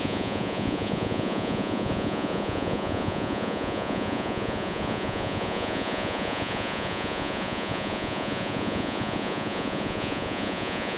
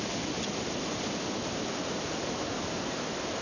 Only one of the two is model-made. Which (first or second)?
first